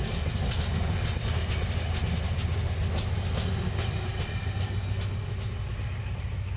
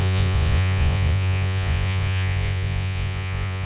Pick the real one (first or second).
first